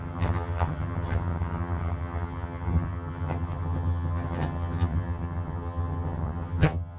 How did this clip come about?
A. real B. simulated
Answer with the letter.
B